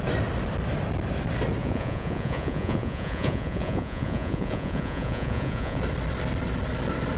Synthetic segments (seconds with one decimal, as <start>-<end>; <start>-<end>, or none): 1.6-5.8